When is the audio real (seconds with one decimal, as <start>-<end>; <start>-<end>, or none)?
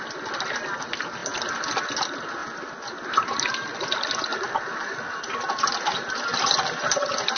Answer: 0.0-7.4